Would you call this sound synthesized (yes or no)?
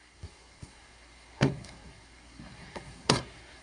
yes